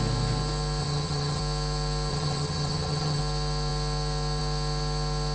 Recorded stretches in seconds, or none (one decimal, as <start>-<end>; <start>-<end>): 0.0-0.8; 1.4-2.1; 3.2-5.3